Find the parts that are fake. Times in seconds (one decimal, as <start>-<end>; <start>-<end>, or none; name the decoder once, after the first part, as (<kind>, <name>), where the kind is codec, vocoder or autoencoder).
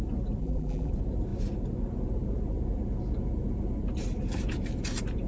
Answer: 0.4-0.9 (vocoder, BigVGAN v2)